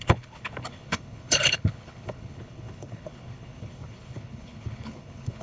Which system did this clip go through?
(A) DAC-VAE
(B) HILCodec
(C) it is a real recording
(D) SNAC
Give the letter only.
B